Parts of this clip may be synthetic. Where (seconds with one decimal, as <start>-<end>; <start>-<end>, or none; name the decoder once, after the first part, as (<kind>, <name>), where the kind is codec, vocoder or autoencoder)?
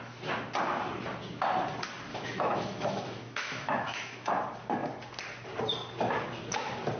2.1-4.3 (autoencoder, DAC-VAE)